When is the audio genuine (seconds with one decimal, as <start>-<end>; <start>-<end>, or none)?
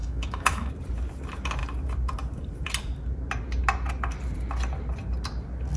0.7-5.8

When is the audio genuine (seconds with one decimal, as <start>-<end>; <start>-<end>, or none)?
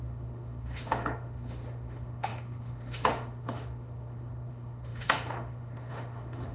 none